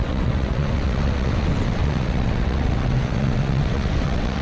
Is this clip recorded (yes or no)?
no